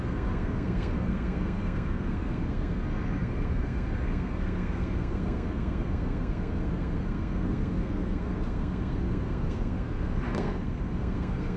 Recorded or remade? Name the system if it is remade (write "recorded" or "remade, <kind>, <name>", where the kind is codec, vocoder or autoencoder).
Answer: remade, codec, SNAC